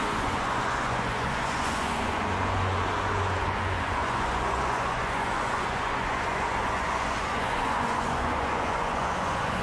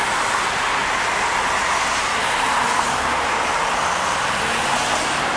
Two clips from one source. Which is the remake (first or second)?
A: first